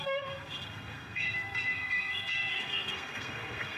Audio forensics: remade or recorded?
remade